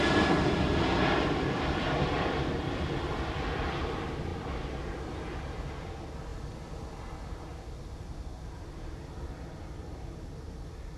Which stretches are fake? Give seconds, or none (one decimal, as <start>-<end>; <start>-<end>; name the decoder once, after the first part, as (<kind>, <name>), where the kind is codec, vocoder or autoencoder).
0.0-6.3 (vocoder, BigVGAN v2); 6.9-7.5; 9.4-11.0